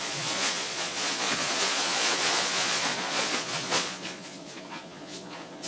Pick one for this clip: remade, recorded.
remade